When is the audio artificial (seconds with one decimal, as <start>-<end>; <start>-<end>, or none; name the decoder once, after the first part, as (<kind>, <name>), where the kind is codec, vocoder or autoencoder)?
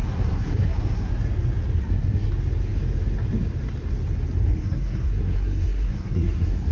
0.0-1.1 (codec, SNAC); 1.8-2.3; 4.4-6.7